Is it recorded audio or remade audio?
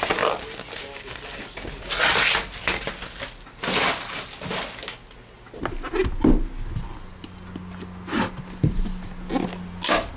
recorded